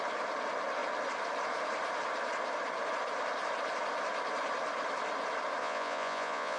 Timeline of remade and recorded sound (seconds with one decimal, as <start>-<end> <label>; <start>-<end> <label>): 0.0-5.6 recorded; 5.6-6.6 remade